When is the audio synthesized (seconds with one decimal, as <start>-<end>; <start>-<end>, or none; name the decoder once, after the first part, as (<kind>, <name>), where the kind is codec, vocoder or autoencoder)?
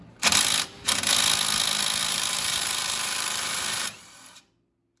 2.0-4.5 (vocoder, BigVGAN v2)